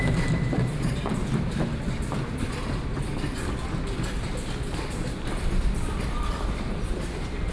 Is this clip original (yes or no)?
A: yes